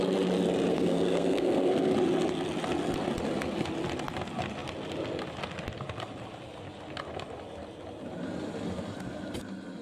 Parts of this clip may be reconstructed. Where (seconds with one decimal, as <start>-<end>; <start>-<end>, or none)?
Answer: 0.7-1.9